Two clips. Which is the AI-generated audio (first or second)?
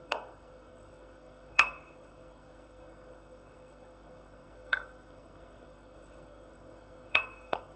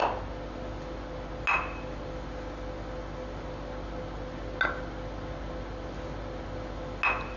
first